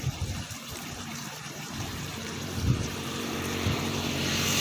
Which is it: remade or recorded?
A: remade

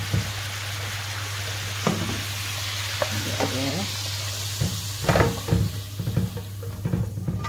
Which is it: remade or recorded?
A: recorded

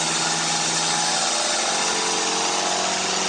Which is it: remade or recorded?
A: recorded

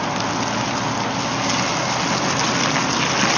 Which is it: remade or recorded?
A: recorded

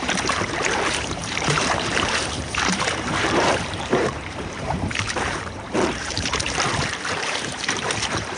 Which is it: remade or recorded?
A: remade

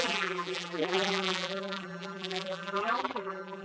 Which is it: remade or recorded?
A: remade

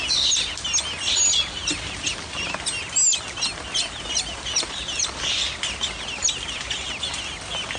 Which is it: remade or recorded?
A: recorded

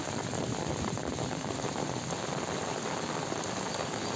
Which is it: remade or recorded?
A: recorded